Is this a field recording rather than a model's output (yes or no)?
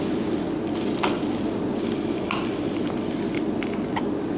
yes